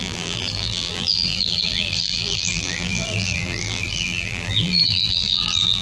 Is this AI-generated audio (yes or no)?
yes